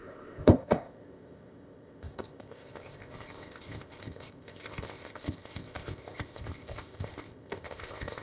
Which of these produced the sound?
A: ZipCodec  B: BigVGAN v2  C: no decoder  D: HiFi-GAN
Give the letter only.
A